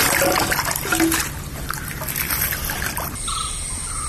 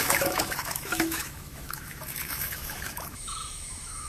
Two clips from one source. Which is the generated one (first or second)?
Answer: second